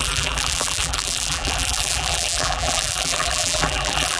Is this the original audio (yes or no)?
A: no